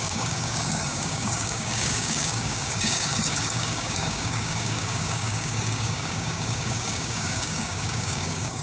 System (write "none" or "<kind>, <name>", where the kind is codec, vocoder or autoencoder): codec, DAC